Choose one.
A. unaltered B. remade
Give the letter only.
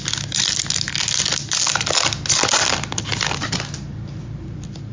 A